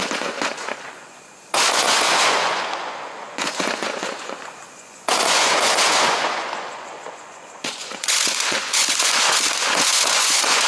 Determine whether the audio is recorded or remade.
remade